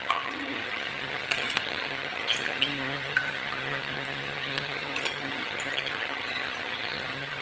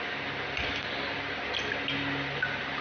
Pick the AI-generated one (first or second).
first